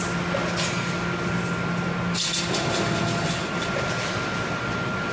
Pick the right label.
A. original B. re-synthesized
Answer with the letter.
A